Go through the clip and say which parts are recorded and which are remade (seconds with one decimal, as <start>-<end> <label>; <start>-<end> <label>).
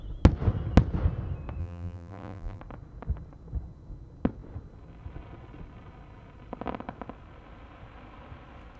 0.0-1.6 recorded; 1.6-2.6 remade; 2.6-8.8 recorded